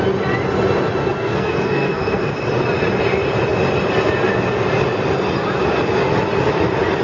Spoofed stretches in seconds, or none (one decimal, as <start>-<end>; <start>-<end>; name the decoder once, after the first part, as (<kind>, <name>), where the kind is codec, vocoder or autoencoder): 1.0-2.3 (codec, SNAC)